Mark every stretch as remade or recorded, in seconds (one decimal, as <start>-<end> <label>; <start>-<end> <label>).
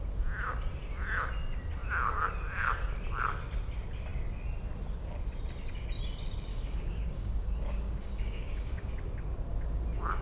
0.0-6.5 recorded; 6.5-8.9 remade; 8.9-10.2 recorded